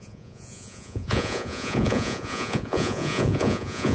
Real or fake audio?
fake